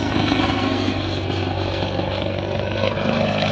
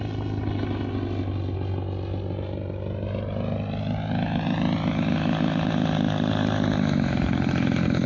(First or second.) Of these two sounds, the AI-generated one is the first